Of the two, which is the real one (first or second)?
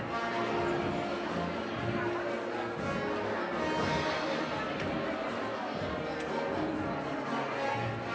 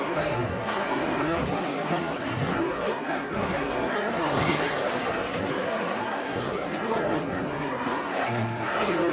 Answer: first